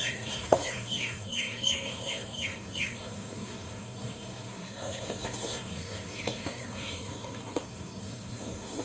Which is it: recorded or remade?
remade